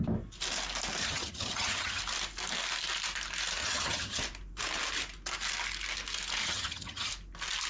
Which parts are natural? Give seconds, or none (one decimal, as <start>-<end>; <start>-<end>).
0.0-1.0; 2.0-3.6; 4.2-6.4; 7.1-7.7